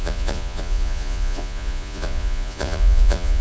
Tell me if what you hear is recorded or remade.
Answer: remade